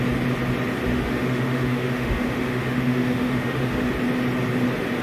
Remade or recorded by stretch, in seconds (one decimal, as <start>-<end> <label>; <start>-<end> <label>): 0.0-0.9 recorded; 0.9-3.9 remade; 3.9-5.0 recorded